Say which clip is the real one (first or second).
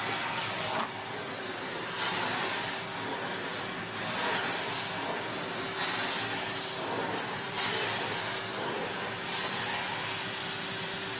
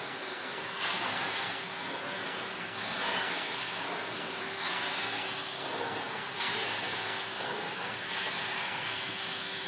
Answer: first